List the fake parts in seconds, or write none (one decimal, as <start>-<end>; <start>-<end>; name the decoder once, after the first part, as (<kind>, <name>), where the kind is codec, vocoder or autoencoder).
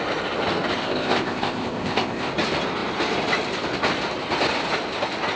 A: 0.8-2.3 (codec, ZipCodec)